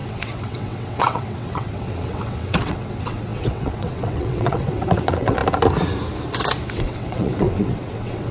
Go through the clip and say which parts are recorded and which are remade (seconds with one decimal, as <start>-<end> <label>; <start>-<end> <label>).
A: 0.0-5.4 remade; 5.4-6.7 recorded; 6.7-8.3 remade